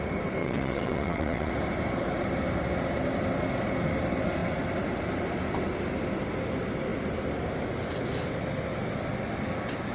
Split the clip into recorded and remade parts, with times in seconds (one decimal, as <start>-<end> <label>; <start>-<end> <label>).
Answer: 0.0-0.4 recorded; 0.4-1.5 remade; 1.5-9.9 recorded